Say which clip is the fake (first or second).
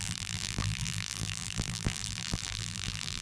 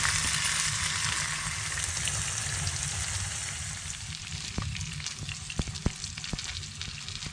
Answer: first